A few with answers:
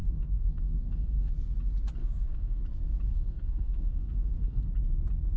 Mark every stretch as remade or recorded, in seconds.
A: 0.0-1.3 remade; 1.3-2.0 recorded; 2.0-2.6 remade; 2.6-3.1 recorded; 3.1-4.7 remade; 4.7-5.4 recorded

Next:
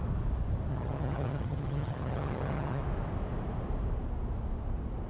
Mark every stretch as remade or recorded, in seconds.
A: 0.0-0.7 recorded; 0.7-2.8 remade; 2.8-5.1 recorded

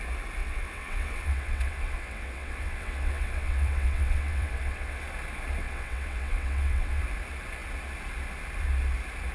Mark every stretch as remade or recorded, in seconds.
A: 0.0-0.4 recorded; 0.4-5.0 remade; 5.0-5.6 recorded; 5.6-7.0 remade; 7.0-9.3 recorded

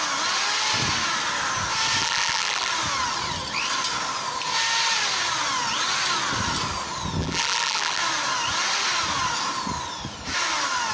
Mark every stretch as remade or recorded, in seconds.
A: 0.0-2.0 recorded; 2.0-2.7 remade; 2.7-7.2 recorded; 7.2-8.0 remade; 8.0-10.9 recorded

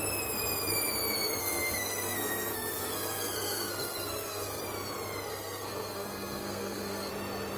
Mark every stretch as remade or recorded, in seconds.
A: 0.0-1.4 recorded; 1.4-4.6 remade; 4.6-5.3 recorded; 5.3-7.1 remade; 7.1-7.6 recorded